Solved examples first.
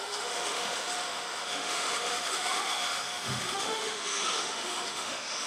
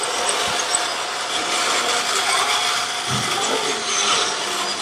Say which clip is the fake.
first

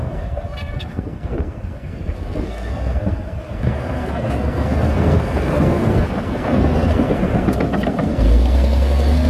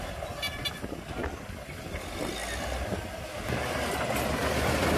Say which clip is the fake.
first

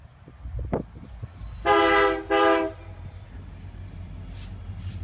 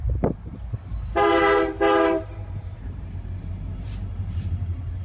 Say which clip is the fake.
second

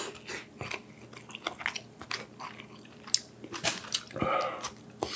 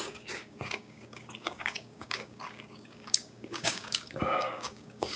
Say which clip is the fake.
second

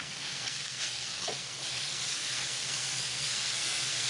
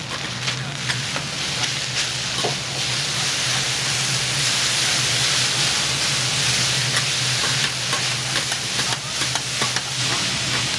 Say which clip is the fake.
first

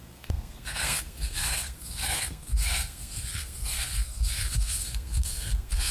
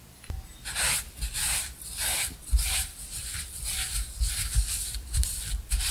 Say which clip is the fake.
first